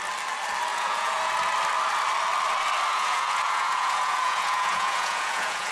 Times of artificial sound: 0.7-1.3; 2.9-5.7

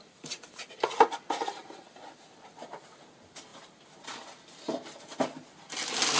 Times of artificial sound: none